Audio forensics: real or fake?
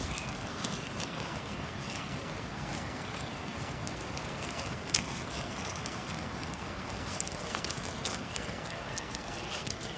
fake